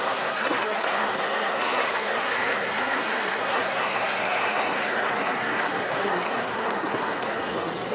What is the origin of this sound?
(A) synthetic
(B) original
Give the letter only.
A